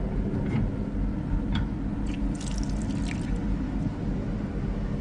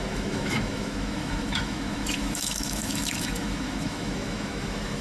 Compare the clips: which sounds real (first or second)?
first